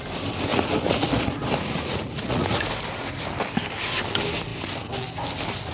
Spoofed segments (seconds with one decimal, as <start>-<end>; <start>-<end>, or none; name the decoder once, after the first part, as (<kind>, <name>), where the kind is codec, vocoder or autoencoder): 0.5-2.7 (vocoder, Vocos)